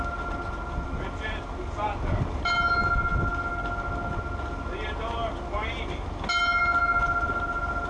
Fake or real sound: real